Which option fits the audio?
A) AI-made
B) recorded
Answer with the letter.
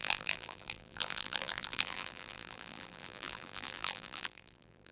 A